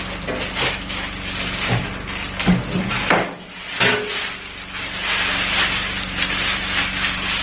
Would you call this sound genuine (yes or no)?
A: yes